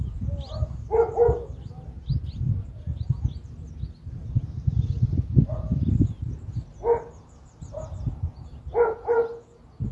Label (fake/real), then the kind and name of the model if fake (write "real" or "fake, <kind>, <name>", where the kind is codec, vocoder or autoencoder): real